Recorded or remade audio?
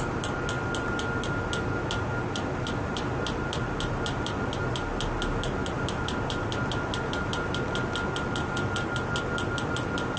recorded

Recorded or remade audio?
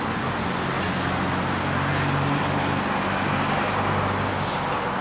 recorded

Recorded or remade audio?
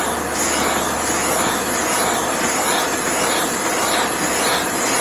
recorded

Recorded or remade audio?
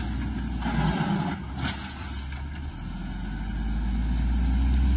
recorded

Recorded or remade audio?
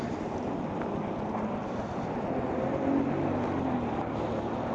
recorded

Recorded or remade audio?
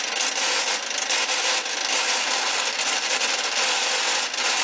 recorded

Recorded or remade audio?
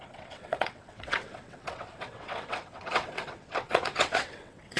remade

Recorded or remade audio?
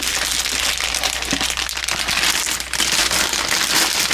recorded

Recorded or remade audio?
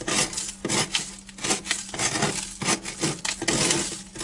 recorded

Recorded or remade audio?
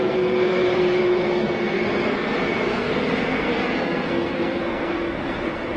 remade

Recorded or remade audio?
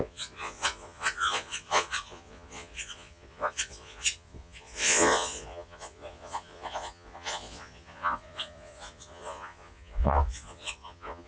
remade